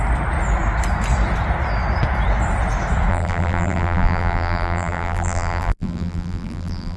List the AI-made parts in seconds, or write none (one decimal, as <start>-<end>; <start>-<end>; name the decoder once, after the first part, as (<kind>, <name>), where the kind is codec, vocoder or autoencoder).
3.1-7.0 (vocoder, BigVGAN v2)